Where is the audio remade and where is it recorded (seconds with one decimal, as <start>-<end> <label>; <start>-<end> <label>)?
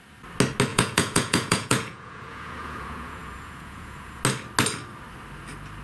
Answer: 0.0-0.7 recorded; 0.7-4.2 remade; 4.2-5.8 recorded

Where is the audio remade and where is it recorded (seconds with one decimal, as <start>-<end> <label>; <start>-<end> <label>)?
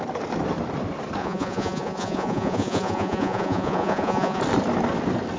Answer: 0.0-1.2 recorded; 1.2-4.4 remade; 4.4-5.4 recorded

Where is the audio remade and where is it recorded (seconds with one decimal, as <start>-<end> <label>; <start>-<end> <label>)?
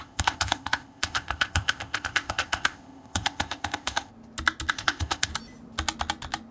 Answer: 0.0-4.1 remade; 4.1-4.7 recorded; 4.7-5.3 remade; 5.3-6.5 recorded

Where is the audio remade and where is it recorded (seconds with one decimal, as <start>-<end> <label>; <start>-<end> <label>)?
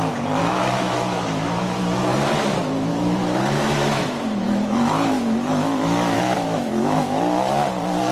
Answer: 0.0-0.4 recorded; 0.4-1.8 remade; 1.8-2.9 recorded; 2.9-7.2 remade; 7.2-8.1 recorded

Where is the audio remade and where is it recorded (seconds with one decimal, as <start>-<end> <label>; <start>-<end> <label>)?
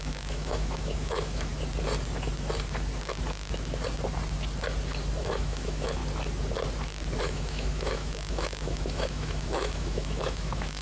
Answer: 0.0-1.5 remade; 1.5-5.2 recorded; 5.2-6.0 remade; 6.0-7.2 recorded; 7.2-10.8 remade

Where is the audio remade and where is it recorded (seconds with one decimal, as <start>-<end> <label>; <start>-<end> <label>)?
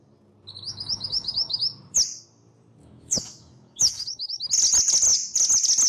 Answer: 0.0-0.7 recorded; 0.7-1.6 remade; 1.6-2.8 recorded; 2.8-4.4 remade; 4.4-5.9 recorded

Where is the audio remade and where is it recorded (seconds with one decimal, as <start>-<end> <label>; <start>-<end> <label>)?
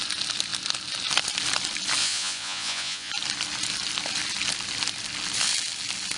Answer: 0.0-2.0 recorded; 2.0-3.1 remade; 3.1-6.2 recorded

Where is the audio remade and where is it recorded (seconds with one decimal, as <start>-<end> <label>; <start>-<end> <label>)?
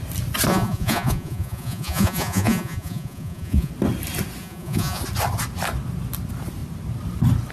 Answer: 0.0-0.5 recorded; 0.5-3.7 remade; 3.7-4.4 recorded; 4.4-5.0 remade; 5.0-7.5 recorded